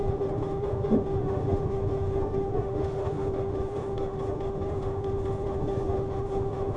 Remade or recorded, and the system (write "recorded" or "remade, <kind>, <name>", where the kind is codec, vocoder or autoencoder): remade, autoencoder, DAC-VAE